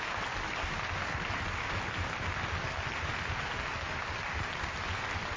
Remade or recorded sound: recorded